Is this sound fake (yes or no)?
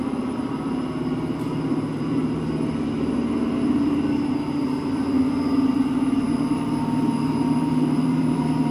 yes